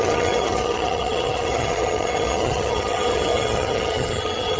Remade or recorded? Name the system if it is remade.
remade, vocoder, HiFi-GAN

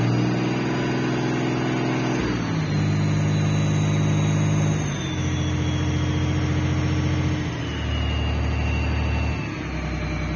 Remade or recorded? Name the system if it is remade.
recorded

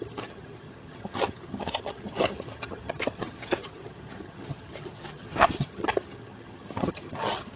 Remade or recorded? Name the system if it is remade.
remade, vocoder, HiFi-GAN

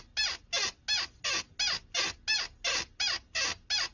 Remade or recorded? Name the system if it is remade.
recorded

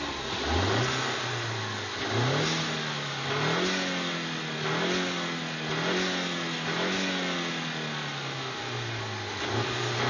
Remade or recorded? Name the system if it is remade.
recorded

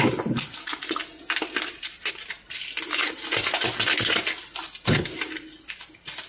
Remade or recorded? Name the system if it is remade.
recorded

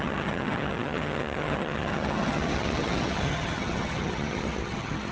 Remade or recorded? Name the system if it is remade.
remade, vocoder, HiFi-GAN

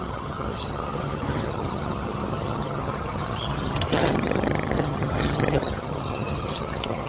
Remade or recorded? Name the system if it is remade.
remade, vocoder, HiFi-GAN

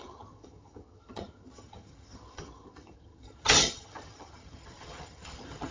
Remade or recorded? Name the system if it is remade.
remade, vocoder, HiFi-GAN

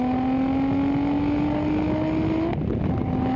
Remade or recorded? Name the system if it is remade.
recorded